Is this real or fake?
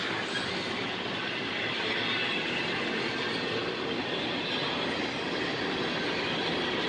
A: real